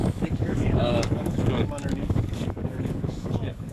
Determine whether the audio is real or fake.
fake